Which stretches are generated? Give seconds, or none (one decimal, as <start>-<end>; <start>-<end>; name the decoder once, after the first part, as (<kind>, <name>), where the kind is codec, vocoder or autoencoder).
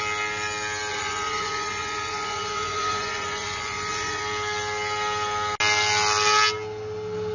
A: 0.9-4.2 (vocoder, Vocos)